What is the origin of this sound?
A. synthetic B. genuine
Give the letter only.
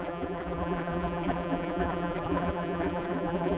A